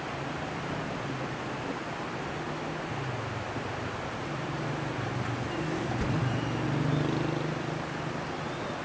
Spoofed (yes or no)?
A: no